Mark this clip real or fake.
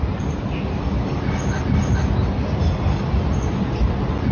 real